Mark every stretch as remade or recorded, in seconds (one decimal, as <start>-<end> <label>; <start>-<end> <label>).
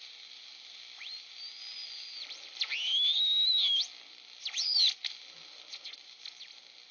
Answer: 0.0-5.7 recorded; 5.7-6.2 remade; 6.2-6.9 recorded